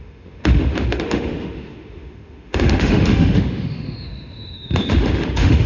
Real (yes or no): no